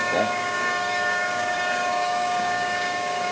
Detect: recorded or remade remade